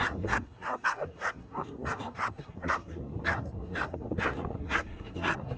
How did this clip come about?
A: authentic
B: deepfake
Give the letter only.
B